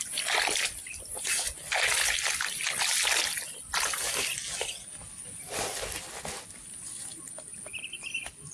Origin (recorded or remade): recorded